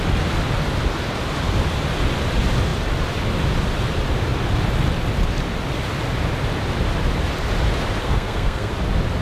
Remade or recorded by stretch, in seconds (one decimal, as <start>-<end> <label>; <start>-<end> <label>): 0.0-8.0 recorded; 8.0-8.7 remade; 8.7-9.2 recorded